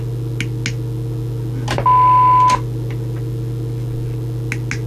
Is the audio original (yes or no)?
yes